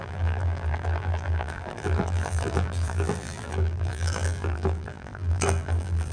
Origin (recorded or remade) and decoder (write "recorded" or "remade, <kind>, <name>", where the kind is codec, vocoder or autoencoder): remade, vocoder, BigVGAN v2